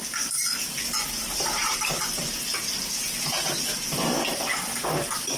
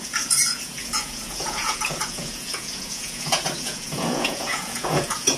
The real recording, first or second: first